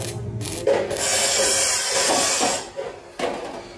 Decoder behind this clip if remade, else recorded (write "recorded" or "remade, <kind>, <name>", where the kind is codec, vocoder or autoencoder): recorded